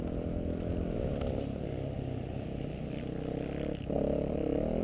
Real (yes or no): yes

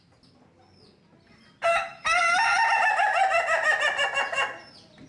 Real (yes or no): yes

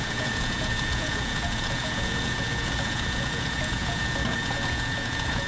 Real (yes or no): no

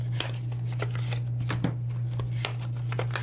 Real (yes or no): yes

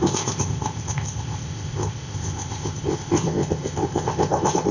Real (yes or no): no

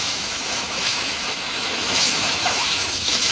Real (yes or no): no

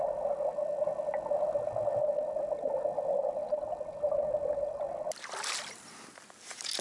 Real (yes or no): yes